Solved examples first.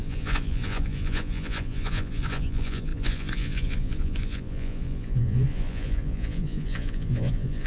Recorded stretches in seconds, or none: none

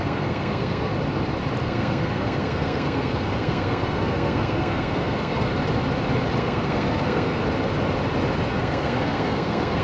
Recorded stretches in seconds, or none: 0.9-1.6; 5.5-6.4; 7.4-8.5

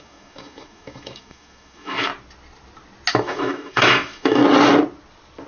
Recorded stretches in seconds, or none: 2.1-3.1; 4.4-5.5

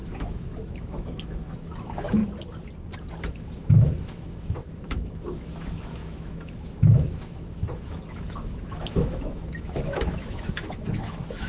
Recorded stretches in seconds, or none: 2.2-3.2

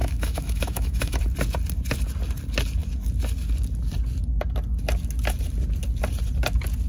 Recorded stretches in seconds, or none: 1.2-6.9

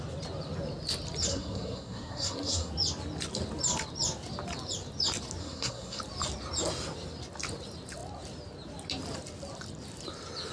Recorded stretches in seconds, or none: 0.0-1.3; 2.7-5.4; 6.0-10.5

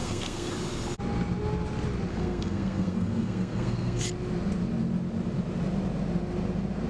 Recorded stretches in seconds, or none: 0.5-2.1; 4.0-6.9